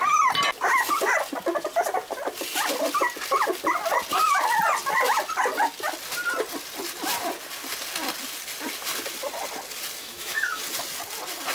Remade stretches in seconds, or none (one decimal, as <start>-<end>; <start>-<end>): 10.0-10.6